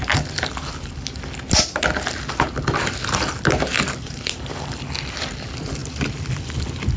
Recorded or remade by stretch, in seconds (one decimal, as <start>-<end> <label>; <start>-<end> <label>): 0.0-7.0 recorded